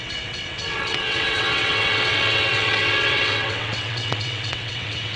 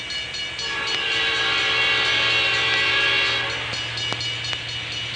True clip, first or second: second